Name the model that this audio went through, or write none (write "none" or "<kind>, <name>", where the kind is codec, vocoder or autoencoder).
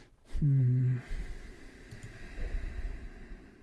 none